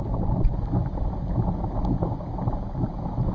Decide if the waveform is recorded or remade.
recorded